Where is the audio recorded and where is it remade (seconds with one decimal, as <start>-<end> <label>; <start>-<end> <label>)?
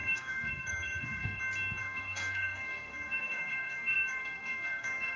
0.0-1.4 remade; 1.4-1.8 recorded; 1.8-5.2 remade